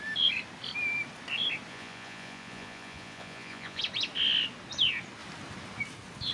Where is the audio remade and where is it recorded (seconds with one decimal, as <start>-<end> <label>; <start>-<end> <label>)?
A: 0.0-1.7 recorded; 1.7-3.8 remade; 3.8-6.3 recorded